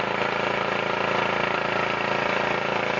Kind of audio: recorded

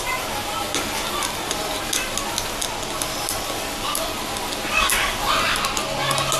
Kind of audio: recorded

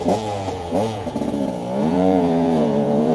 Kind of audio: remade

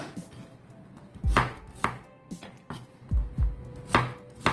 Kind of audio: recorded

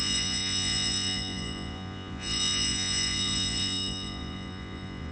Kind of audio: remade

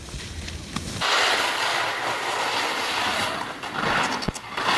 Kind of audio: recorded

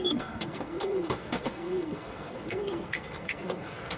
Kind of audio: remade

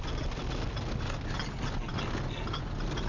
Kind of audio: recorded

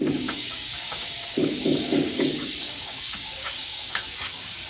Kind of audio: remade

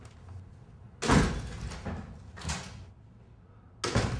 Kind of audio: recorded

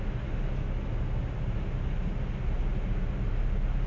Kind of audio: recorded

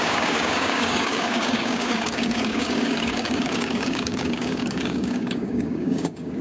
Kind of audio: remade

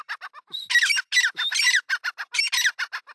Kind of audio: recorded